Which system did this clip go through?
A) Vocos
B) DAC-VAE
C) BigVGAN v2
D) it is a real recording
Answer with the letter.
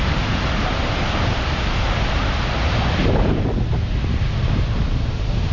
C